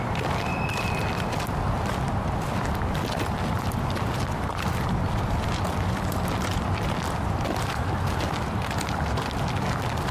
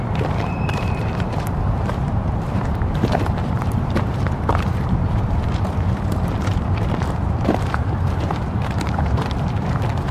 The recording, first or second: first